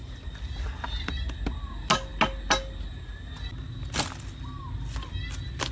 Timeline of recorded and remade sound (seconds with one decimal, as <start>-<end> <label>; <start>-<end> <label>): 0.0-5.7 recorded